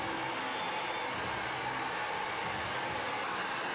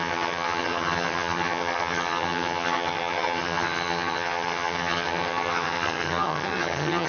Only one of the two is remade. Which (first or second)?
second